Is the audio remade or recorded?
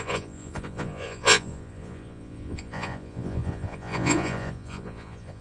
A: remade